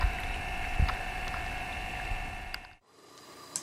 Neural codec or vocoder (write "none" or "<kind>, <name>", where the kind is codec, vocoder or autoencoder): none